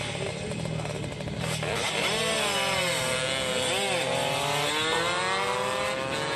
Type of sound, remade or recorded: recorded